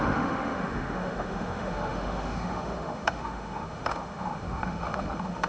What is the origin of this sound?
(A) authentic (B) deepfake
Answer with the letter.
B